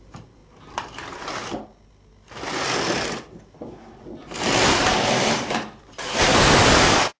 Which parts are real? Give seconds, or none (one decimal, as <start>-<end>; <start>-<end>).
0.4-4.7; 6.3-6.8